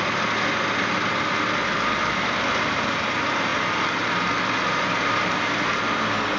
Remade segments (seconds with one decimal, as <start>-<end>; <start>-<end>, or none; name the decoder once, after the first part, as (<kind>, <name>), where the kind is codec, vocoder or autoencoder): none